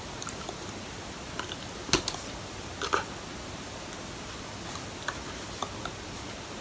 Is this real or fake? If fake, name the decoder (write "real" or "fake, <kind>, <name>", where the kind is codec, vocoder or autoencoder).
real